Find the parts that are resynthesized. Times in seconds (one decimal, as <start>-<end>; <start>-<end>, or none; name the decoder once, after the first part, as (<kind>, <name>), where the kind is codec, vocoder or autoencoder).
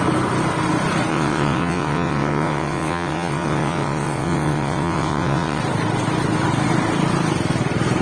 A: 1.1-5.6 (vocoder, WaveNeXt)